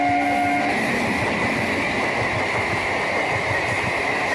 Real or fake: real